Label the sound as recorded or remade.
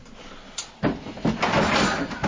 recorded